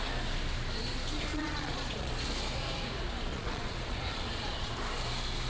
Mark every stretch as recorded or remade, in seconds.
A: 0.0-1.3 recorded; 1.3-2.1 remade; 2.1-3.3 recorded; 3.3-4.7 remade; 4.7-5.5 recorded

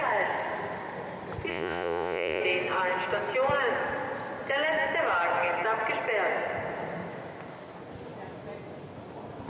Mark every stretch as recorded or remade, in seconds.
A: 0.0-1.5 recorded; 1.5-2.4 remade; 2.4-9.5 recorded

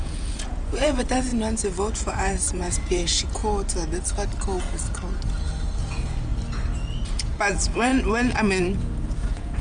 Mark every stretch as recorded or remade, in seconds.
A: 0.0-1.3 remade; 1.3-1.9 recorded; 1.9-3.4 remade; 3.4-5.8 recorded; 5.8-6.3 remade; 6.3-7.1 recorded; 7.1-7.9 remade; 7.9-8.6 recorded; 8.6-9.6 remade

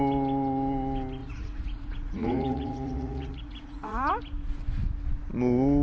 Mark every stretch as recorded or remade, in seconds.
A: 0.0-1.2 recorded; 1.2-4.1 remade; 4.1-5.8 recorded

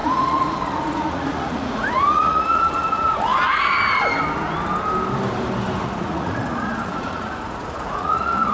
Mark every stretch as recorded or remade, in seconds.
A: 0.0-3.3 remade; 3.3-5.8 recorded; 5.8-8.5 remade

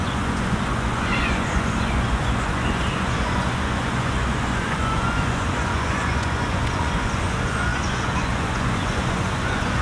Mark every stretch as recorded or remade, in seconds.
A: 0.0-9.8 remade